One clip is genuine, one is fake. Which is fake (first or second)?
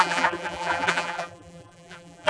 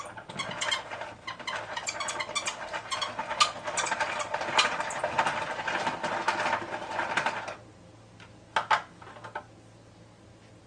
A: first